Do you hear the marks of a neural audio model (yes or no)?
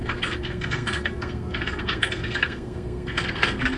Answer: yes